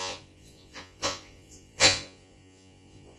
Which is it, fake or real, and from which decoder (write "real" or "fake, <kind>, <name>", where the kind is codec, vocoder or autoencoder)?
fake, vocoder, Vocos